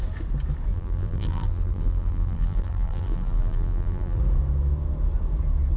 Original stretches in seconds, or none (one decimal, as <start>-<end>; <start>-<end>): 0.0-0.7; 4.2-5.8